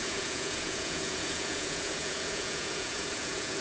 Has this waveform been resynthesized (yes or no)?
yes